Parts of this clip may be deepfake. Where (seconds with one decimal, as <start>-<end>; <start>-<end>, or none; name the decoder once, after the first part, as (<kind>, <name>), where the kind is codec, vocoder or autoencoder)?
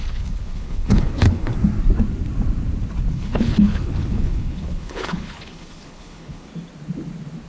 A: 0.0-1.5 (codec, HILCodec); 3.1-6.5